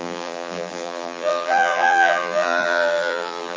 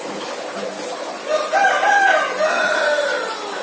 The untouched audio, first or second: second